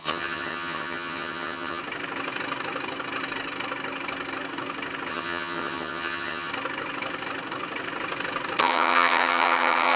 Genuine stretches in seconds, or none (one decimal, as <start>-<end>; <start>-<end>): 1.8-5.1; 6.5-8.6